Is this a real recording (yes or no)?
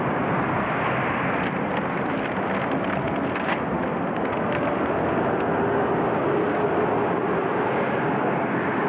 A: yes